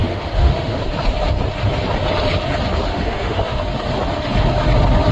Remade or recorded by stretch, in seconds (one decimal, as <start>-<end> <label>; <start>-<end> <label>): 0.0-0.8 remade; 0.8-2.9 recorded; 2.9-3.6 remade; 3.6-5.1 recorded

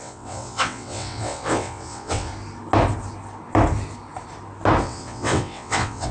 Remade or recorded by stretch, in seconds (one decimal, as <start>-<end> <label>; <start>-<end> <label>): 0.0-2.3 remade; 2.3-4.8 recorded; 4.8-6.1 remade

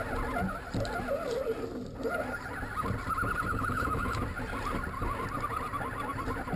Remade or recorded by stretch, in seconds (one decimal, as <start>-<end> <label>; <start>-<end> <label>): 0.0-3.5 recorded; 3.5-4.2 remade; 4.2-6.6 recorded

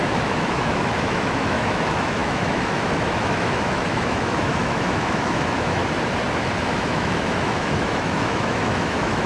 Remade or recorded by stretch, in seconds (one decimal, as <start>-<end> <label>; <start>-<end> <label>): 0.0-5.8 remade; 5.8-6.6 recorded; 6.6-9.3 remade

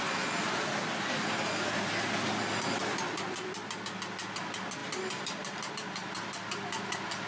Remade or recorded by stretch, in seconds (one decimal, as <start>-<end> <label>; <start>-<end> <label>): 0.0-4.8 recorded; 4.8-5.7 remade; 5.7-7.3 recorded

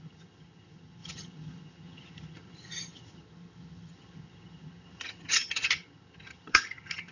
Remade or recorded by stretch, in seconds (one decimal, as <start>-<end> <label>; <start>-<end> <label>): 0.0-7.1 remade

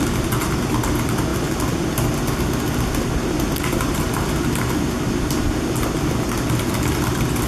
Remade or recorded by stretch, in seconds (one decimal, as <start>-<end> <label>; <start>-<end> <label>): 0.0-7.5 recorded

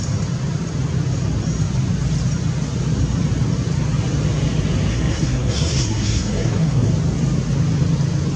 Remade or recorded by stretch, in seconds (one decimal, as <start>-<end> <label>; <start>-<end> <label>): 0.0-4.9 recorded; 4.9-6.9 remade; 6.9-8.4 recorded